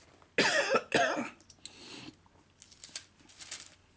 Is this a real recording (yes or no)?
yes